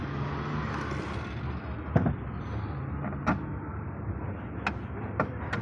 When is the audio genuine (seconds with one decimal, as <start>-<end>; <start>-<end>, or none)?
0.0-3.7; 4.3-5.6